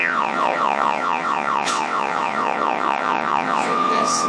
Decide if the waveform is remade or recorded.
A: remade